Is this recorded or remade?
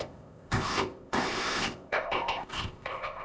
remade